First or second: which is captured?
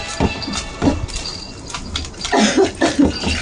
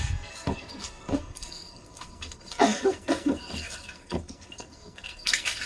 first